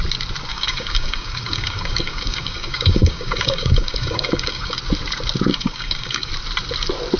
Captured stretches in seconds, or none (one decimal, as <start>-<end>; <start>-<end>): 0.0-0.5; 4.8-5.5; 6.3-7.2